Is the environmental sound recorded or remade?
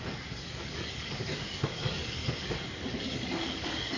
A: remade